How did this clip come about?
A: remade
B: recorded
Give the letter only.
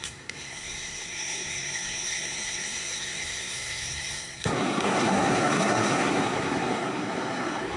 A